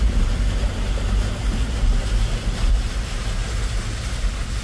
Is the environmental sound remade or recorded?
recorded